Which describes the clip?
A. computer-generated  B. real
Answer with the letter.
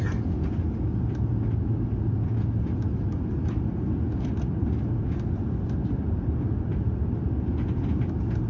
B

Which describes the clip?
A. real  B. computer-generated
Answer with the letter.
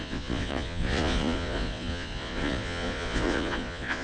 B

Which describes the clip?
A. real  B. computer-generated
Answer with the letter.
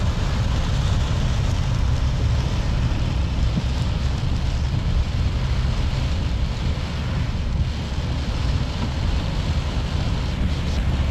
A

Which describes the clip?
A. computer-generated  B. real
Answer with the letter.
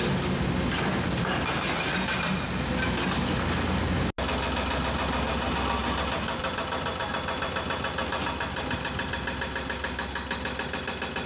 B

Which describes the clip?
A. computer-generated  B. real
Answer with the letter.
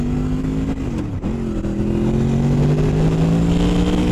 B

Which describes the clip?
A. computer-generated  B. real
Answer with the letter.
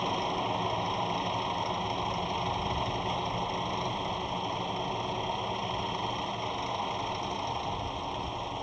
B